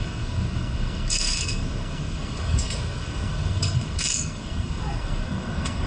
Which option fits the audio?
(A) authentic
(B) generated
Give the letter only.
B